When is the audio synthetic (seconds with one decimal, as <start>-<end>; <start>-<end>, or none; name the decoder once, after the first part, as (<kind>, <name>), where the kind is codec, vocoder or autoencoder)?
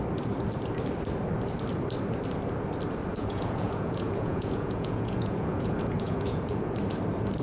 3.1-6.7 (vocoder, Vocos)